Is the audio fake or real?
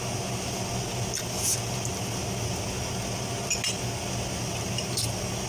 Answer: real